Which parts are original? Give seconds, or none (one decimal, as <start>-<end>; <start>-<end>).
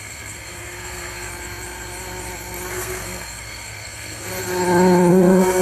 1.3-2.7; 4.3-5.1